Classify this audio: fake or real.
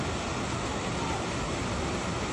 real